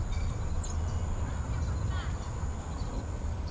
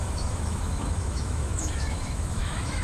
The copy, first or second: second